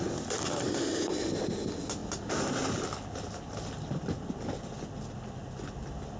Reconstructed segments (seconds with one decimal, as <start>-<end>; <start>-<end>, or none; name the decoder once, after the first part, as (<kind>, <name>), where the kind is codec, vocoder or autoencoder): none